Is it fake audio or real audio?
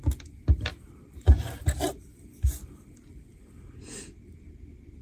real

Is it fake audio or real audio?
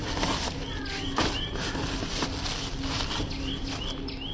real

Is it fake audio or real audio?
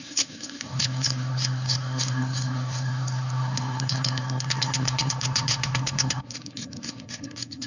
fake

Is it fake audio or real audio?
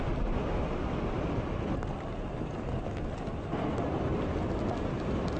real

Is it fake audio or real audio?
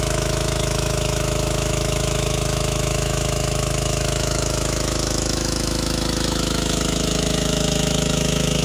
fake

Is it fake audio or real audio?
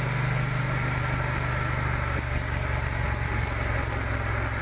real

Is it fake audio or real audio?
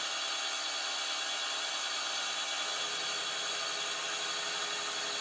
real